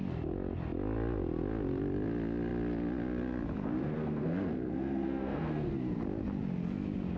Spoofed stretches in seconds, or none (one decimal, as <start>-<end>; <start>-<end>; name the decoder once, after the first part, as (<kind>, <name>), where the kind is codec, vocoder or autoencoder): 3.8-5.7 (codec, SNAC)